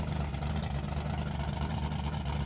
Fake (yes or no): no